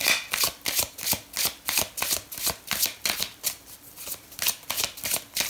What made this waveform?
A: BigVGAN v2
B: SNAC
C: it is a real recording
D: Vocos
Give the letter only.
C